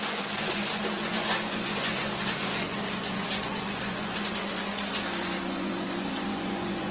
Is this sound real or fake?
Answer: fake